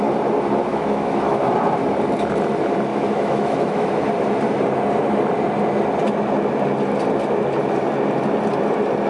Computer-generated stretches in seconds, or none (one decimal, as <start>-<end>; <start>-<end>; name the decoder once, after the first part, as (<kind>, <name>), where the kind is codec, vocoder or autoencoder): 0.7-1.5 (autoencoder, DAC-VAE); 2.9-3.9

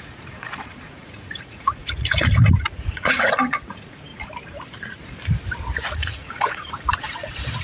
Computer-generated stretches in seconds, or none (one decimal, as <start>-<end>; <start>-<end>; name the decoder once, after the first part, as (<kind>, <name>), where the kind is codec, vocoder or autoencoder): 0.0-4.1 (vocoder, Vocos); 5.8-7.6